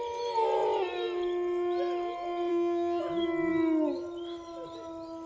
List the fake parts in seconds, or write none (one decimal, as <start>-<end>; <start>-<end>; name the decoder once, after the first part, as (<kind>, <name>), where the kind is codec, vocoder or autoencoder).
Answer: 2.5-3.0 (vocoder, HiFi-GAN)